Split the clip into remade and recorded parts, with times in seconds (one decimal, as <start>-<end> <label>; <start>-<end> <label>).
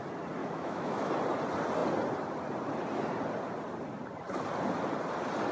0.0-0.4 recorded; 0.4-1.1 remade; 1.1-5.5 recorded